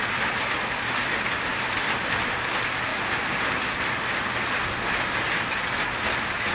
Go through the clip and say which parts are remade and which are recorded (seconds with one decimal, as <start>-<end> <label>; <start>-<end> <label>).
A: 0.0-6.5 recorded